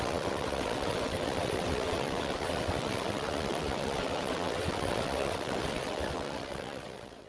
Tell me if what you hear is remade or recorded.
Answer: remade